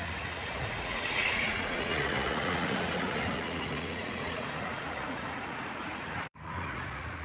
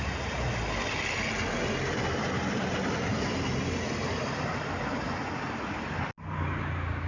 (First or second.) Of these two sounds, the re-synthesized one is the first